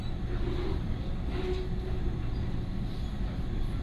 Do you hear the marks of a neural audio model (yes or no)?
no